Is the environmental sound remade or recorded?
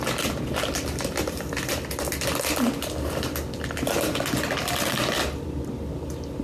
recorded